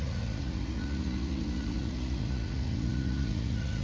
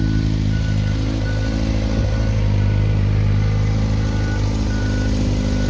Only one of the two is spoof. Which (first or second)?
first